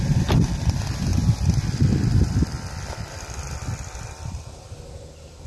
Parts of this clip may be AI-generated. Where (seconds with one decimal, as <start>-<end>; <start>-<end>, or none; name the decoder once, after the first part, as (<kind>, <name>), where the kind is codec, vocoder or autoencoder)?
none